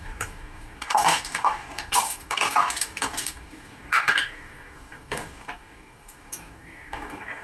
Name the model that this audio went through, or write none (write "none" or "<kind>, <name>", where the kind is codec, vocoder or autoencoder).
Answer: codec, DAC